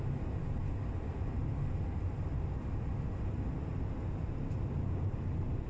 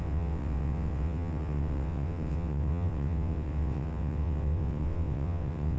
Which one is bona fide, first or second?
first